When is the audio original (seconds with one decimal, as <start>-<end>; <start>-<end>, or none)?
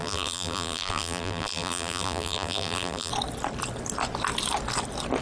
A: 3.1-5.2